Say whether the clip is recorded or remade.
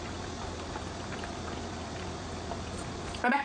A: recorded